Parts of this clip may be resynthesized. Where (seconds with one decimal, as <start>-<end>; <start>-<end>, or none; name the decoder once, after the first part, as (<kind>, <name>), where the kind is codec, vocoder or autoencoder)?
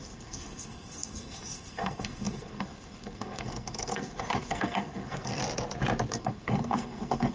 0.0-5.4 (codec, SNAC); 6.1-7.3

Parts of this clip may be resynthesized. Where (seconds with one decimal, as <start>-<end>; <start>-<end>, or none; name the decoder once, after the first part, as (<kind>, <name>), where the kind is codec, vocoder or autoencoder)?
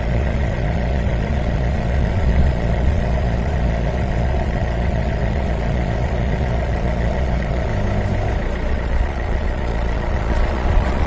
0.0-7.7 (vocoder, Vocos); 8.7-11.1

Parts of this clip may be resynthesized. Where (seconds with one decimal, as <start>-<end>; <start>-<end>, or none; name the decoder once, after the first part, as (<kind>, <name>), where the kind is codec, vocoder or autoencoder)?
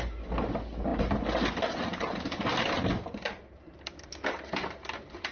none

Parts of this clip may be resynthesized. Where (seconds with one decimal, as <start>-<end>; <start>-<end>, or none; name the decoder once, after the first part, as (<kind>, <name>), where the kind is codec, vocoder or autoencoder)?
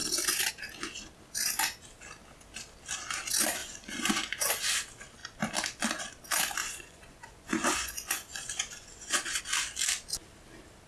3.6-4.5 (vocoder, Vocos); 6.6-9.4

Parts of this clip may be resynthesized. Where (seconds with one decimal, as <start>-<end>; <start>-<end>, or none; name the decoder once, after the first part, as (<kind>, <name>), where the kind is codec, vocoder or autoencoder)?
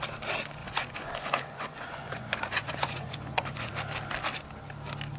0.6-3.7 (vocoder, Vocos)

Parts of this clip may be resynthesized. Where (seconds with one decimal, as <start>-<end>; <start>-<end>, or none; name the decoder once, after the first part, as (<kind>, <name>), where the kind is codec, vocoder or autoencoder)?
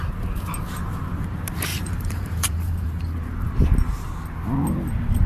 1.7-3.0 (vocoder, BigVGAN v2)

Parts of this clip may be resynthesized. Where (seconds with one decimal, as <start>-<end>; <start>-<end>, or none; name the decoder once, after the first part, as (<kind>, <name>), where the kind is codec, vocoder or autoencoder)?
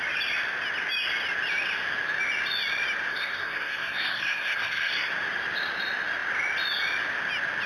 3.1-5.1 (codec, SNAC)